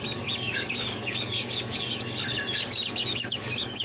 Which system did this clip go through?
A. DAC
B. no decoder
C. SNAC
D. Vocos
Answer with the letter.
A